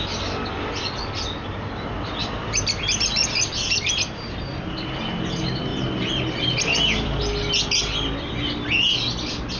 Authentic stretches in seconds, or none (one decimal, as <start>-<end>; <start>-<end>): 0.0-2.2; 5.0-5.7; 7.2-9.6